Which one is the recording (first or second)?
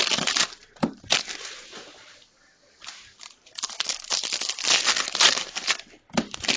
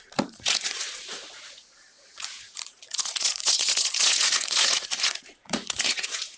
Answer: first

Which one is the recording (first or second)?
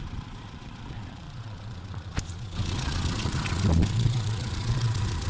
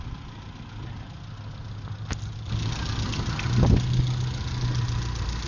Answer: second